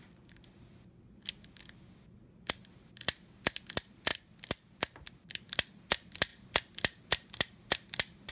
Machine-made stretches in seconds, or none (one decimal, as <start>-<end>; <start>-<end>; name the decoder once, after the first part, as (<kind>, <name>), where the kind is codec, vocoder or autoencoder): none